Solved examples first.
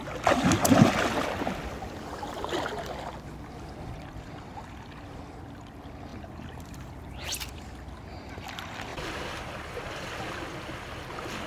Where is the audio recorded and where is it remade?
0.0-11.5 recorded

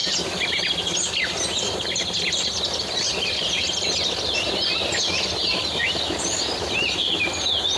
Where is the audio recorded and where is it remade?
0.0-5.4 recorded; 5.4-7.1 remade; 7.1-7.8 recorded

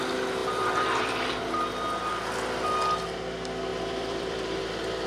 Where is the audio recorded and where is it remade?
0.0-0.4 recorded; 0.4-1.5 remade; 1.5-3.7 recorded; 3.7-4.6 remade; 4.6-5.1 recorded

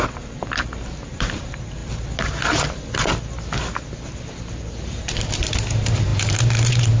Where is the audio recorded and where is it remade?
0.0-1.8 remade; 1.8-4.6 recorded; 4.6-7.0 remade

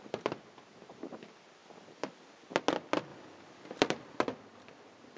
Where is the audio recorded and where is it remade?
0.0-1.6 recorded; 1.6-2.5 remade; 2.5-3.1 recorded; 3.1-4.2 remade; 4.2-5.2 recorded

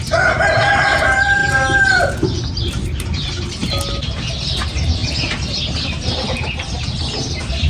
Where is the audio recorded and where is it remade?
0.0-1.4 remade; 1.4-2.1 recorded; 2.1-3.6 remade; 3.6-4.3 recorded; 4.3-5.0 remade; 5.0-7.7 recorded

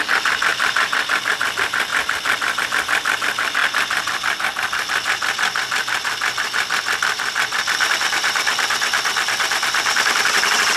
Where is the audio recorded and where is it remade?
0.0-3.6 remade; 3.6-7.9 recorded; 7.9-10.8 remade

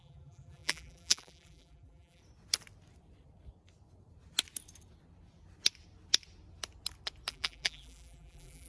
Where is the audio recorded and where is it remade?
0.0-2.2 remade; 2.2-7.3 recorded; 7.3-8.7 remade